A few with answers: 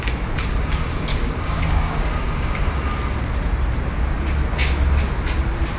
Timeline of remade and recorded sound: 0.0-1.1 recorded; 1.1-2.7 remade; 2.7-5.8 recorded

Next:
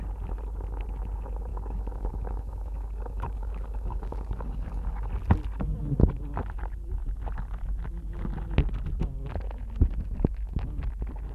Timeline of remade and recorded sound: 0.0-1.5 recorded; 1.5-5.1 remade; 5.1-11.3 recorded

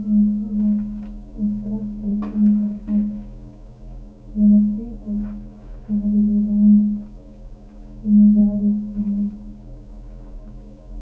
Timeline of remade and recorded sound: 0.0-11.0 remade

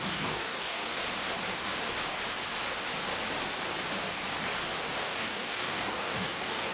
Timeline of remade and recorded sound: 0.0-1.0 remade; 1.0-5.0 recorded; 5.0-6.7 remade

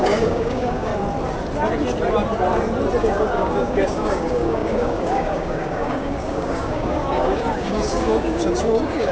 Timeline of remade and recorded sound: 0.0-0.9 remade; 0.9-3.0 recorded; 3.0-9.1 remade

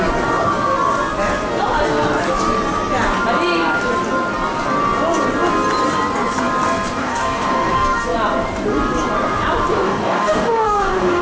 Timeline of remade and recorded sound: 0.0-7.0 recorded; 7.0-8.0 remade; 8.0-9.7 recorded; 9.7-11.2 remade

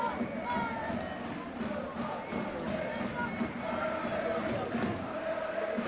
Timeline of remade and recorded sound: 0.0-5.9 recorded